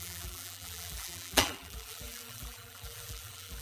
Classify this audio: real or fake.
fake